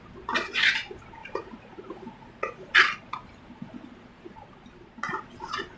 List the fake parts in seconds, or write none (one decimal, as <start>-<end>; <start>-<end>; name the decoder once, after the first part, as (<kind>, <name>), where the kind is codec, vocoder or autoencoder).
1.2-2.7 (vocoder, Vocos)